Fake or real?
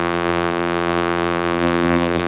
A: fake